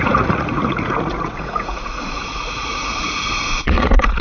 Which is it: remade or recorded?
remade